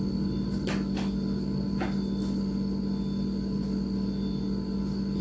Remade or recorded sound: recorded